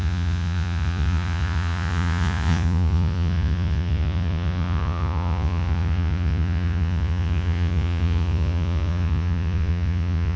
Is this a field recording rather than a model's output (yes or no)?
no